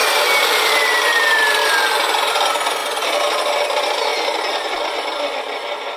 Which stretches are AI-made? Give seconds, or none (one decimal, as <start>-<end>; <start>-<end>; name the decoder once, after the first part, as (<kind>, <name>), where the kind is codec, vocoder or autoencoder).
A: none